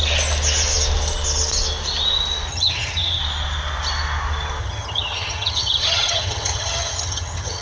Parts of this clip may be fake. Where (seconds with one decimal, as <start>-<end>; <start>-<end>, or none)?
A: 2.5-3.2; 4.6-7.6